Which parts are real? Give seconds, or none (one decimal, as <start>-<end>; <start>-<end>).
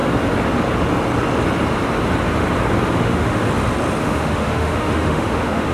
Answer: 0.0-3.0; 3.4-4.0